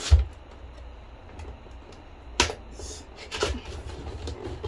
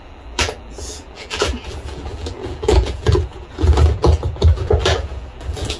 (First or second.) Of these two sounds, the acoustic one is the first